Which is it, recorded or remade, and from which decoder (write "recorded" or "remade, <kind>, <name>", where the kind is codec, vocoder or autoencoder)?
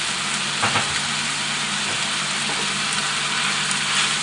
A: recorded